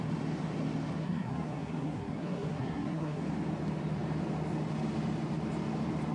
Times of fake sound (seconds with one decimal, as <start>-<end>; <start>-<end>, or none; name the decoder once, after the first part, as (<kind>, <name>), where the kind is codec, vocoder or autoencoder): 1.0-3.2 (codec, SNAC)